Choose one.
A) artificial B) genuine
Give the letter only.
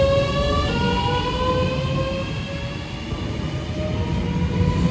B